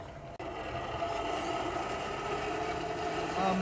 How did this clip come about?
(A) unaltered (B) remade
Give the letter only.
A